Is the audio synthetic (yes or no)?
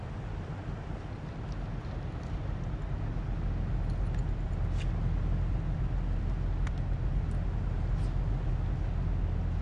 no